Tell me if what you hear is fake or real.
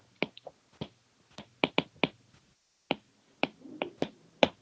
real